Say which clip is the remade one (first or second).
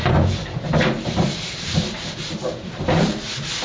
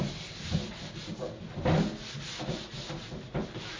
first